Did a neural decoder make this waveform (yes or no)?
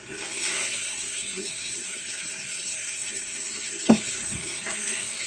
yes